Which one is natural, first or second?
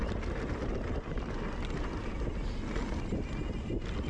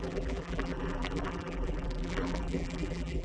first